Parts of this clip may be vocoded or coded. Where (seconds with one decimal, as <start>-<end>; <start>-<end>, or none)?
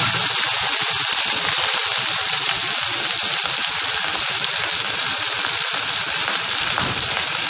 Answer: none